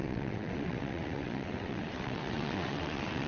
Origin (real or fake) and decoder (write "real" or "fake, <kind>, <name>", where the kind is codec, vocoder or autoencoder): fake, vocoder, WaveNeXt